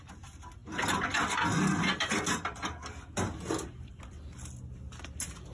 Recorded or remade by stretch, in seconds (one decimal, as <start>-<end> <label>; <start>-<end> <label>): 0.0-5.5 recorded